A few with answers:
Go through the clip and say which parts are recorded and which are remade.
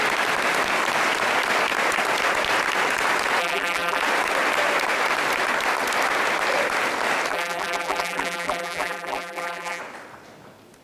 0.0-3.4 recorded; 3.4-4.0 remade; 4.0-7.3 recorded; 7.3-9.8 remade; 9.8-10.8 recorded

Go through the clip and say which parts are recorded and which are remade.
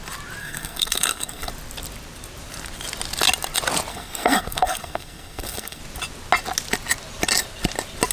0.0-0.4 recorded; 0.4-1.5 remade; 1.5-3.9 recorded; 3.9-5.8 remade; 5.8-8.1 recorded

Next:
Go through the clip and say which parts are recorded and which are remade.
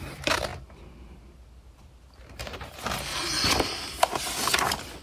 0.0-0.5 remade; 0.5-3.5 recorded; 3.5-5.0 remade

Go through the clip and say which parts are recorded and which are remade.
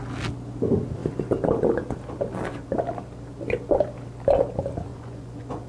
0.0-4.9 recorded; 4.9-5.7 remade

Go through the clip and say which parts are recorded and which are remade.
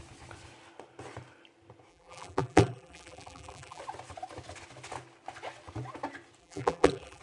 0.0-1.9 recorded; 1.9-3.8 remade; 3.8-6.4 recorded; 6.4-7.2 remade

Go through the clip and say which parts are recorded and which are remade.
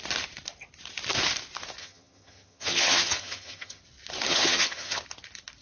0.0-1.8 recorded; 1.8-3.8 remade; 3.8-4.3 recorded; 4.3-5.0 remade; 5.0-5.6 recorded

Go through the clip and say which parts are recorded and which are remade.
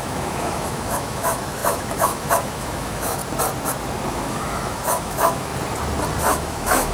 0.0-3.2 remade; 3.2-4.1 recorded; 4.1-5.5 remade; 5.5-6.3 recorded; 6.3-6.9 remade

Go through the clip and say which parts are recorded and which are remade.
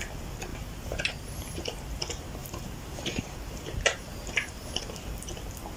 0.0-0.5 recorded; 0.5-2.0 remade; 2.0-2.4 recorded; 2.4-4.8 remade; 4.8-5.8 recorded